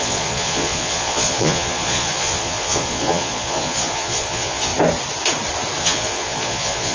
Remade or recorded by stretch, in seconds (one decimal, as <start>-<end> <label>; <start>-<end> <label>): 0.0-4.7 remade; 4.7-5.8 recorded; 5.8-6.9 remade